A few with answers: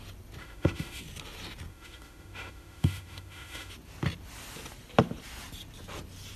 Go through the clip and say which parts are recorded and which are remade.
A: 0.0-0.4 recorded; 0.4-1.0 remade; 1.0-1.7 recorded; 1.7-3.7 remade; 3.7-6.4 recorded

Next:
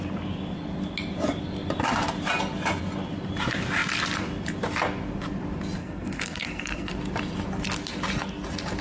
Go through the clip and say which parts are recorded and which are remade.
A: 0.0-5.8 recorded; 5.8-6.9 remade; 6.9-8.8 recorded

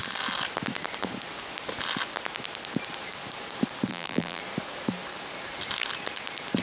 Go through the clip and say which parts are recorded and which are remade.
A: 0.0-3.9 recorded; 3.9-4.4 remade; 4.4-6.6 recorded

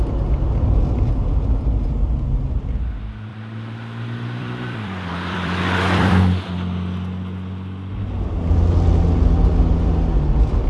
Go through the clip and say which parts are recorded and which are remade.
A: 0.0-3.3 recorded; 3.3-6.5 remade; 6.5-10.7 recorded

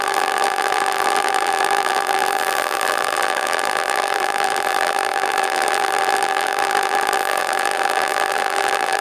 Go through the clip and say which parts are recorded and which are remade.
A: 0.0-9.0 remade

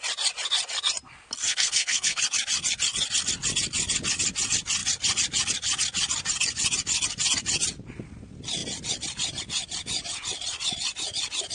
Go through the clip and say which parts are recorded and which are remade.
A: 0.0-1.5 recorded; 1.5-2.2 remade; 2.2-11.5 recorded